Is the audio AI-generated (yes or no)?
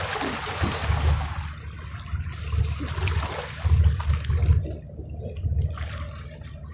no